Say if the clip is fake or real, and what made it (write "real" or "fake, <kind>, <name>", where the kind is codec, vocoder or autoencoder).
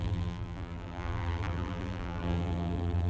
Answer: fake, vocoder, BigVGAN v2